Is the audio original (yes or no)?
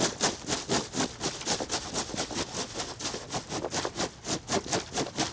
yes